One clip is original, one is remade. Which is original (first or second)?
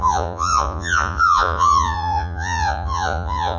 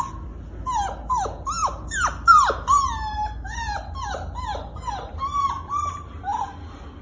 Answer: second